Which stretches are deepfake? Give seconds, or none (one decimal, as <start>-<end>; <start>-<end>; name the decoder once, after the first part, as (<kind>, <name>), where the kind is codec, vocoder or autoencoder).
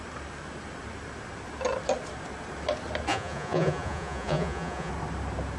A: 3.1-4.9 (vocoder, Vocos)